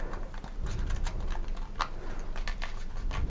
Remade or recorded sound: recorded